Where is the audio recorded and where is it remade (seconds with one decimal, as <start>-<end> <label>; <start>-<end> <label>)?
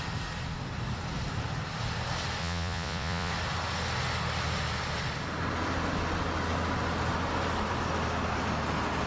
0.0-2.4 recorded; 2.4-3.3 remade; 3.3-9.1 recorded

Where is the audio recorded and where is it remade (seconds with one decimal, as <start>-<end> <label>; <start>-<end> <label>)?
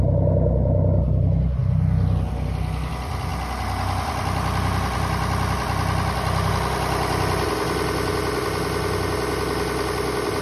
0.0-10.4 recorded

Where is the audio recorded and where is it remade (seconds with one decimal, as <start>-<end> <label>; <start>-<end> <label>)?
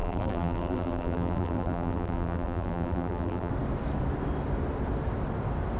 0.0-3.5 remade; 3.5-5.8 recorded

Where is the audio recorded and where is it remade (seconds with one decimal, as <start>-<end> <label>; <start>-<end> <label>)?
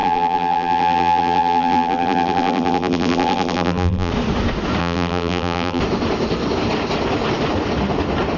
0.0-4.1 remade; 4.1-4.8 recorded; 4.8-5.8 remade; 5.8-8.4 recorded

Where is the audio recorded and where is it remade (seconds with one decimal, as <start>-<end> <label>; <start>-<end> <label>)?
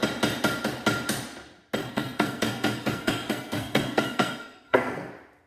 0.0-1.8 recorded; 1.8-5.1 remade; 5.1-5.5 recorded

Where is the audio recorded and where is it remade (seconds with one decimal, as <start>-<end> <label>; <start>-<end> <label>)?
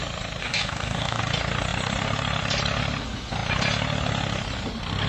0.0-0.4 recorded; 0.4-1.2 remade; 1.2-5.1 recorded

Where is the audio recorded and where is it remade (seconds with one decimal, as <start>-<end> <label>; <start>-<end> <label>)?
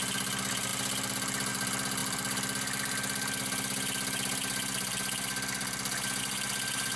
0.0-7.0 recorded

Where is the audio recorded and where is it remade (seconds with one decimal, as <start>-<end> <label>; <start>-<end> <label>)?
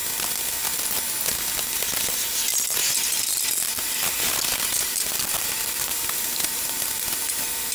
0.0-2.8 recorded; 2.8-7.2 remade; 7.2-7.7 recorded